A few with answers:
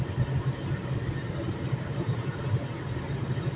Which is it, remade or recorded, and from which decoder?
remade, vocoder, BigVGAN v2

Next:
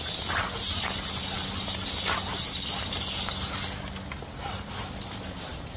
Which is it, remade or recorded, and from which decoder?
recorded